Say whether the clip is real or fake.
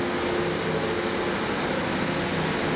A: real